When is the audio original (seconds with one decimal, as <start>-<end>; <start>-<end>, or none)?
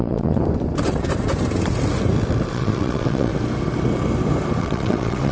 0.4-2.5; 3.3-4.6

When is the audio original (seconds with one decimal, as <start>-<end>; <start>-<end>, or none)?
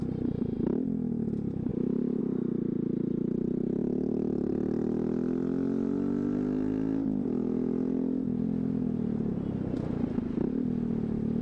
0.0-11.4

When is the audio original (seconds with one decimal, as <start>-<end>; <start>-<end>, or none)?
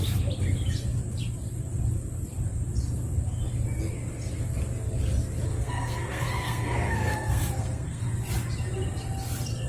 0.0-5.5; 8.1-9.7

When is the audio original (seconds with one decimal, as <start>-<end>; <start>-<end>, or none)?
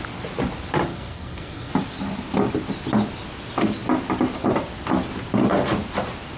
0.0-0.9; 1.7-6.4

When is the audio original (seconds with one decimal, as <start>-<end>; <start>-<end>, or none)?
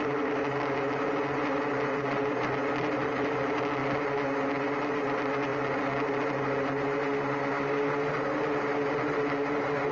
0.0-9.9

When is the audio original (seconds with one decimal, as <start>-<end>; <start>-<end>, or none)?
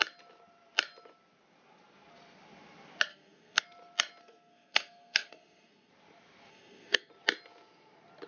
0.0-3.1; 3.6-4.2; 5.9-6.5; 7.1-8.3